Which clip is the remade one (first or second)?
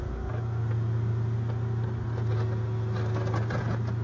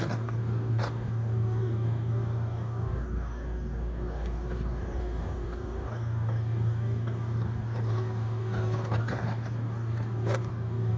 second